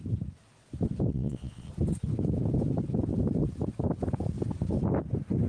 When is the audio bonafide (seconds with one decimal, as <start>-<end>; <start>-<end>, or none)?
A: 0.0-1.1; 1.7-5.5